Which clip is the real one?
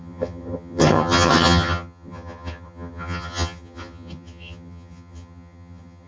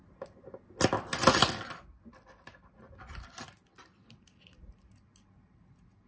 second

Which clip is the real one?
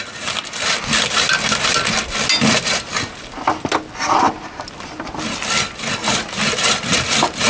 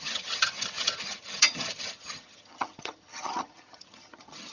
first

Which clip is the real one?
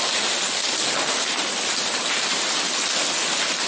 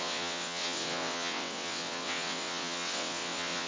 first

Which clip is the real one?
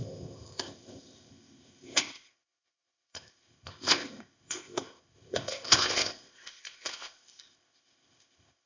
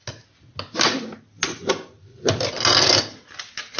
second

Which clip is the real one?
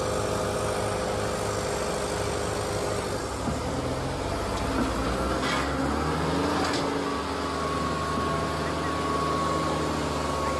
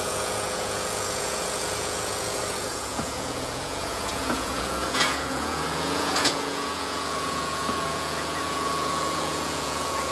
first